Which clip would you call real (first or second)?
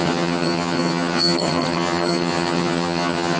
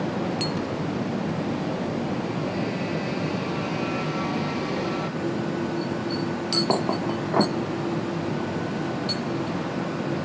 second